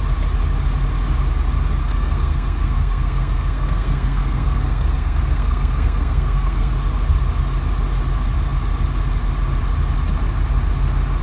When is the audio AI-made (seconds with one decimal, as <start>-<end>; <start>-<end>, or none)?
1.8-6.7